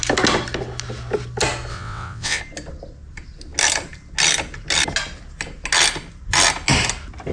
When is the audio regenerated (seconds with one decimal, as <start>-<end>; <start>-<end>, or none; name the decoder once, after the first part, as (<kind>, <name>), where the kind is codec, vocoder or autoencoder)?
1.7-2.4 (vocoder, WaveNeXt)